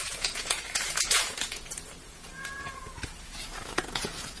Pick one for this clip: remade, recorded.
remade